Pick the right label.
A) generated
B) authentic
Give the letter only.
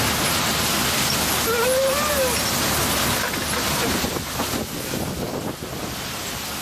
B